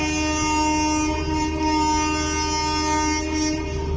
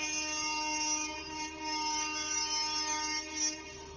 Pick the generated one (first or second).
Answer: second